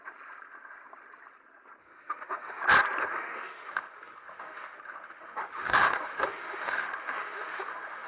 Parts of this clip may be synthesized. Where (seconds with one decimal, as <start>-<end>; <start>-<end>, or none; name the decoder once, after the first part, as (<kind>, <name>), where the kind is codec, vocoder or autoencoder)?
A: 1.8-2.6 (autoencoder, DAC-VAE); 3.0-8.1